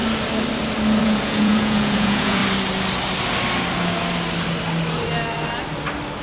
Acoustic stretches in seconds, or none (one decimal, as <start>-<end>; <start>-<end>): 0.0-1.0; 2.4-6.2